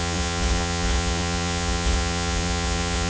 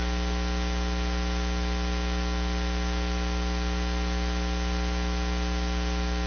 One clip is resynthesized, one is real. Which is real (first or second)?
second